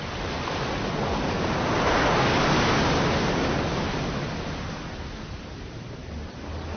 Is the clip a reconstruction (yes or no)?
no